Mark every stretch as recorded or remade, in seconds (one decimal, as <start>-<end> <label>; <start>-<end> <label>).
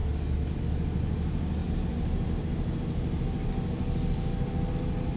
0.0-0.6 remade; 0.6-5.2 recorded